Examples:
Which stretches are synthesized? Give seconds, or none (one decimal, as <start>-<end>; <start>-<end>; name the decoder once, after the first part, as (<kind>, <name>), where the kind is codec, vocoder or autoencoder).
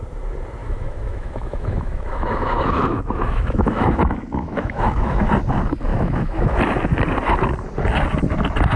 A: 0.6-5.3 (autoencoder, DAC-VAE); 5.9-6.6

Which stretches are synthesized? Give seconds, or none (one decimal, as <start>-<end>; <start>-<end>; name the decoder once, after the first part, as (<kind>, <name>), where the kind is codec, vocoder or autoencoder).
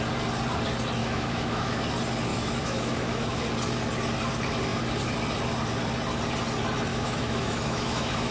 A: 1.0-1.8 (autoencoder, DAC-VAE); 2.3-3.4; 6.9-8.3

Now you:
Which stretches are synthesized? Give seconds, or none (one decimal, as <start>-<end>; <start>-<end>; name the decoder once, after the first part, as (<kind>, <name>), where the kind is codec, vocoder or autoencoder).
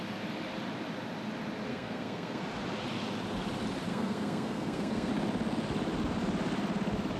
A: 1.7-2.4 (codec, SNAC); 3.9-5.1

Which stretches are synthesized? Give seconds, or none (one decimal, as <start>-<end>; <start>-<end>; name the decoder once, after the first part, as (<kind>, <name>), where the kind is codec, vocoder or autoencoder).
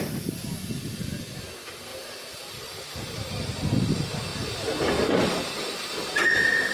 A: 1.9-3.4 (vocoder, BigVGAN v2)